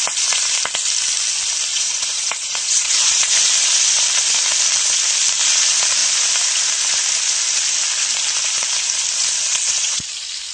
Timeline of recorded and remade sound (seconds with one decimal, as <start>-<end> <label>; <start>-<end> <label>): 0.0-1.7 recorded; 1.7-3.3 remade; 3.3-9.5 recorded; 9.5-10.1 remade; 10.1-10.5 recorded